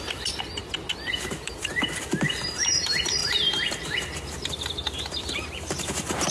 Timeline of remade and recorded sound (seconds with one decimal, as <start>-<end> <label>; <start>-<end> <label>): 0.0-0.6 remade; 0.6-1.1 recorded; 1.1-1.7 remade; 1.7-2.5 recorded; 2.5-6.3 remade